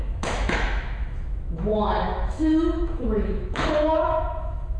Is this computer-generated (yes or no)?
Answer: yes